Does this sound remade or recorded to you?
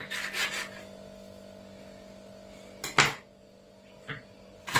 recorded